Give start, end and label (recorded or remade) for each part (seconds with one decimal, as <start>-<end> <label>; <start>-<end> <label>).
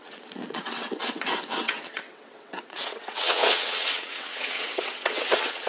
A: 0.0-5.7 remade